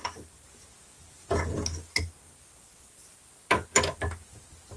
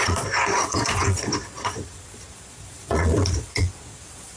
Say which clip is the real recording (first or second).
first